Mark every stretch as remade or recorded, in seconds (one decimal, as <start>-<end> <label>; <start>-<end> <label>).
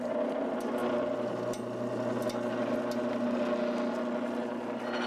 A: 0.0-5.1 recorded